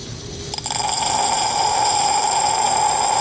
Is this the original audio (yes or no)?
yes